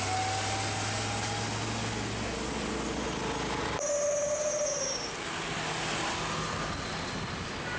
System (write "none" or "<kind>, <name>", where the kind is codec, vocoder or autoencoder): none